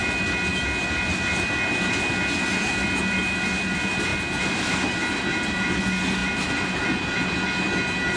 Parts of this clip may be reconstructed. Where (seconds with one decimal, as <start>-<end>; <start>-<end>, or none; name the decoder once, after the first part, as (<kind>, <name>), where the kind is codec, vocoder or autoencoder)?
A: none